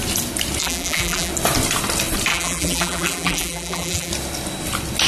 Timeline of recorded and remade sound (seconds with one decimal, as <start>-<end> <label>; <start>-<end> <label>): 0.0-0.6 recorded; 0.6-1.3 remade; 1.3-2.3 recorded; 2.3-4.1 remade; 4.1-5.1 recorded